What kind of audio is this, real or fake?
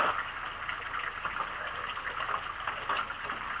real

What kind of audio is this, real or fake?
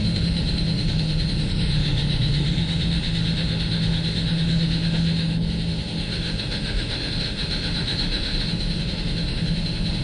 fake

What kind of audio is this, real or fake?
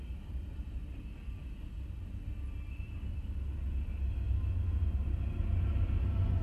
real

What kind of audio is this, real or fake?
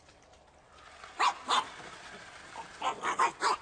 real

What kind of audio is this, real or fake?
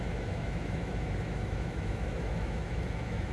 fake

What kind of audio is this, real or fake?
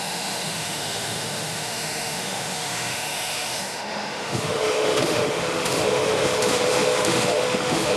fake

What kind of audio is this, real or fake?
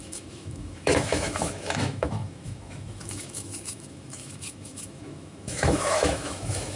fake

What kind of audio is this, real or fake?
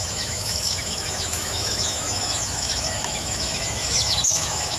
fake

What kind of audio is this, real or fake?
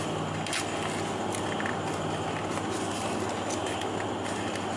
real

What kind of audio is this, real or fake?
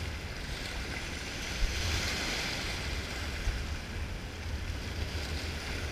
real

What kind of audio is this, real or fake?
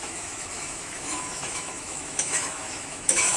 fake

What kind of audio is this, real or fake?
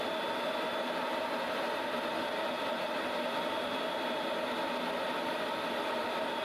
real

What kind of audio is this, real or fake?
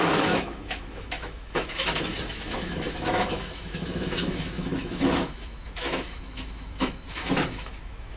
fake